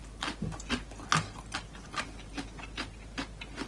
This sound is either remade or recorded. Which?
recorded